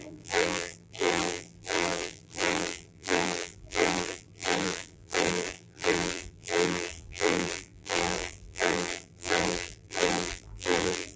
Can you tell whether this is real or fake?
fake